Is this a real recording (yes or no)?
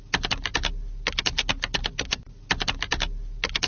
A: yes